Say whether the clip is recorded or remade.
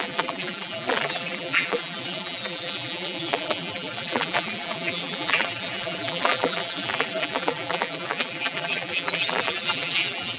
remade